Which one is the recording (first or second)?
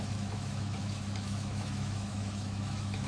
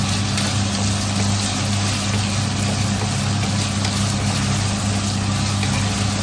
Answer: second